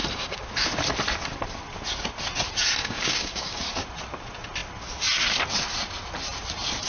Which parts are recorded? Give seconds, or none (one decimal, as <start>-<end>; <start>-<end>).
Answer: 0.5-2.8; 3.6-6.9